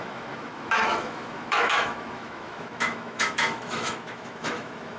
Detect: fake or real fake